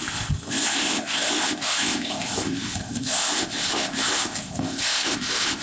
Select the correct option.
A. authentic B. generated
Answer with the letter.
B